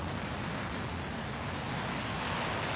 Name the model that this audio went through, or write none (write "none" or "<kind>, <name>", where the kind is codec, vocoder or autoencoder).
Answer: none